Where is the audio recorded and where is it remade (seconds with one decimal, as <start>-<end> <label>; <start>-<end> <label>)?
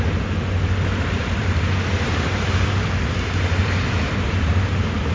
0.0-1.4 recorded; 1.4-4.5 remade; 4.5-5.1 recorded